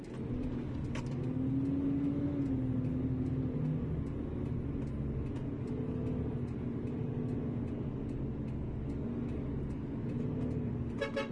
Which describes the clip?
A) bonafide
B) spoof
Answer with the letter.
A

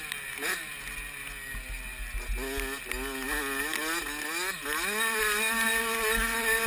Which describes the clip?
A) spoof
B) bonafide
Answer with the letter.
B